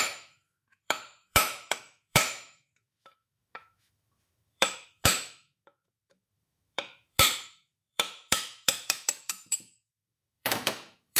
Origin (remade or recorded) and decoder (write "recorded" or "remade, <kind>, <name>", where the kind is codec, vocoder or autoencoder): remade, autoencoder, DAC-VAE